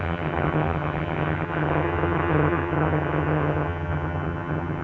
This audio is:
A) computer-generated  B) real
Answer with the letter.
A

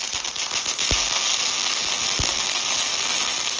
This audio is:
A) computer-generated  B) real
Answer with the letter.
B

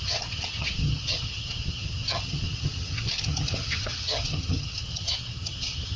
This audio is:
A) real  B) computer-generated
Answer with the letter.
B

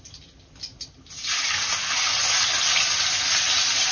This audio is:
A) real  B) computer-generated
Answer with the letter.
A